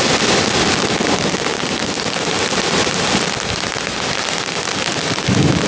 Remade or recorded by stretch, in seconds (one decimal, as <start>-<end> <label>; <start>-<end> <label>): 0.0-3.9 recorded; 3.9-5.7 remade